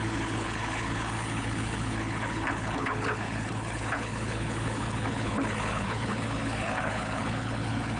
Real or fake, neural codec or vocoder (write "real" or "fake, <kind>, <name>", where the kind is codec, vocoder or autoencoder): fake, codec, HILCodec